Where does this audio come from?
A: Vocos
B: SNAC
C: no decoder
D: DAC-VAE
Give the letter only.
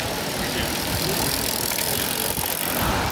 C